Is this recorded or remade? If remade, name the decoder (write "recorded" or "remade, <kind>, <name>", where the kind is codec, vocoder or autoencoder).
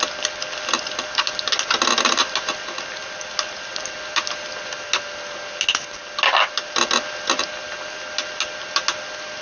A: recorded